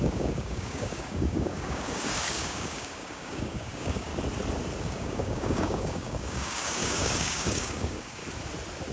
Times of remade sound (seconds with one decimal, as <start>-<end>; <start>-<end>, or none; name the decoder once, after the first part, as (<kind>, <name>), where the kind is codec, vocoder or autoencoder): 0.0-4.1 (codec, DAC); 4.8-8.2